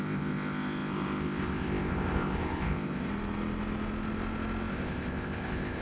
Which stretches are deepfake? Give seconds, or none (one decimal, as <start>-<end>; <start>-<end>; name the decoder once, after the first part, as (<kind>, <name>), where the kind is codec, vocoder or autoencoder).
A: 0.0-3.1 (codec, ZipCodec); 4.7-5.8

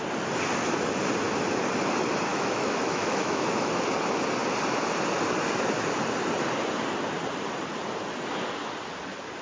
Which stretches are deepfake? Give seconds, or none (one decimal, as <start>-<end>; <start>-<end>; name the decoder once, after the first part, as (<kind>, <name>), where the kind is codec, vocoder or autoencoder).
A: 2.3-3.7 (autoencoder, DAC-VAE)

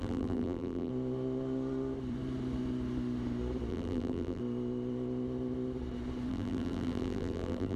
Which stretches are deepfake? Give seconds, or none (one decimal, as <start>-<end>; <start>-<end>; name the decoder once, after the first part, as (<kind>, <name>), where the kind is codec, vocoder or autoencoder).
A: 0.0-0.9 (vocoder, BigVGAN v2); 3.7-4.4; 6.3-7.8

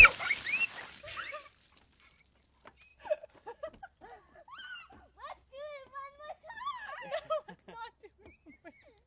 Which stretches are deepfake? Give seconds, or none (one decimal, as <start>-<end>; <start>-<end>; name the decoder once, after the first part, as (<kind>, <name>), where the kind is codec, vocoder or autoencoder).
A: none